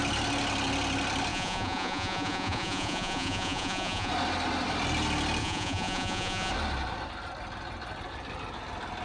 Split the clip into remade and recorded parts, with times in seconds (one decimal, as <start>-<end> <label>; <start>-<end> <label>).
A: 0.0-1.3 recorded; 1.3-4.1 remade; 4.1-5.4 recorded; 5.4-6.5 remade; 6.5-9.0 recorded